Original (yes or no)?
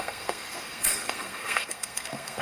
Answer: no